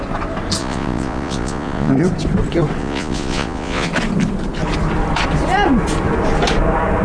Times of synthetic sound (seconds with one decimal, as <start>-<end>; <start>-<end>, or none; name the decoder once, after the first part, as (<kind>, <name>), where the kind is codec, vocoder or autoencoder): 0.6-1.9 (vocoder, Vocos); 2.8-3.9